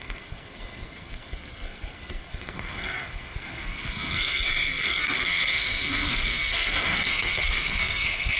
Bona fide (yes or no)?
no